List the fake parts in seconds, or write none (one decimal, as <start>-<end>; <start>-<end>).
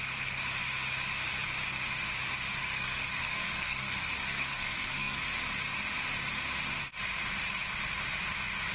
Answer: 2.6-5.2